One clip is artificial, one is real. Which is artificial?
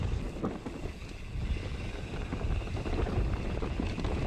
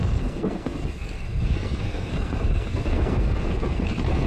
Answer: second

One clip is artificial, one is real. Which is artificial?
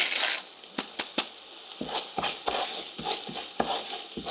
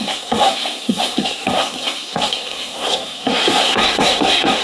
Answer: second